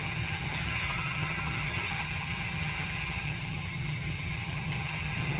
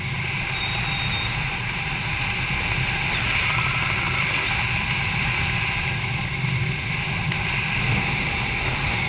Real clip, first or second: second